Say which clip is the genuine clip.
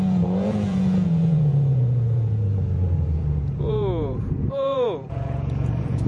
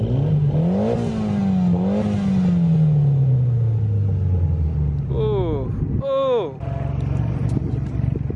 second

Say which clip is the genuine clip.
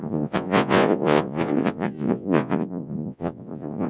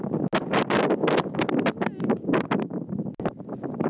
second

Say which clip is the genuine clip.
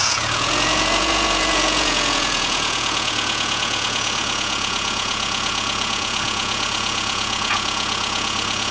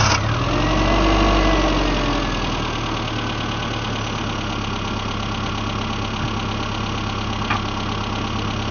second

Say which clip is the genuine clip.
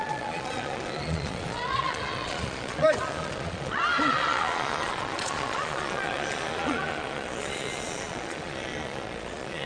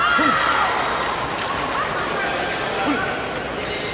second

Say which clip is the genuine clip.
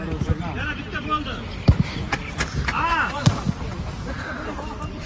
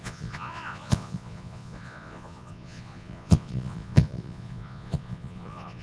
first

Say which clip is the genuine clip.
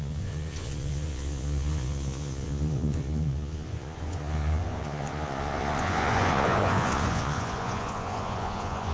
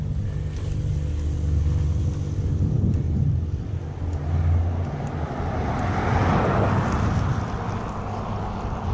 second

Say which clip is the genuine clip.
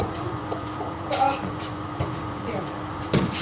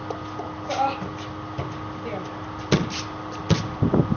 second